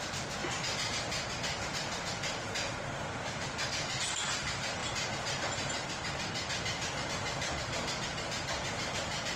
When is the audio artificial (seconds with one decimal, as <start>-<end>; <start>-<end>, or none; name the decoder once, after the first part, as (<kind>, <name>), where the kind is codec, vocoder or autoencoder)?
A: 0.0-9.4 (vocoder, BigVGAN v2)